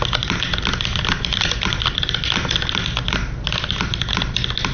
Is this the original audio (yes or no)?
yes